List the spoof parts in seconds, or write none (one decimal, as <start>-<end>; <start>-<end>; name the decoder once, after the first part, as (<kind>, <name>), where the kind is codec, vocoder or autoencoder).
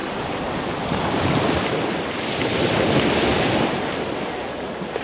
none